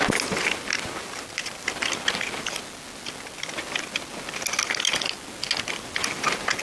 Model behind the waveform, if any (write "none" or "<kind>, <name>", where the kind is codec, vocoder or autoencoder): none